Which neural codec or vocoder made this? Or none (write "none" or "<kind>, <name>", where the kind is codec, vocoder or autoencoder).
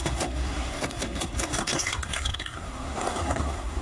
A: codec, SNAC